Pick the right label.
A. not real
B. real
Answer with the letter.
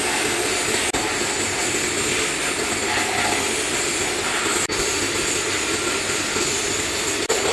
B